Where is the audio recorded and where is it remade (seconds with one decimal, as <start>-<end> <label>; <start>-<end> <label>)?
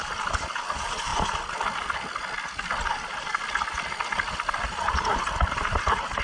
0.0-6.2 recorded